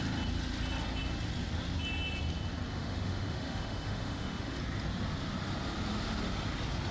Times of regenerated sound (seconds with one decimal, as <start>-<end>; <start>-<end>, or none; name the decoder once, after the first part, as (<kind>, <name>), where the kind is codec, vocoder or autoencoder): 2.7-4.6 (autoencoder, DAC-VAE)